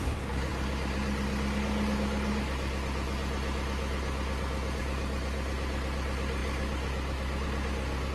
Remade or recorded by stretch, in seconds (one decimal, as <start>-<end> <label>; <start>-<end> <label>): 0.0-8.1 recorded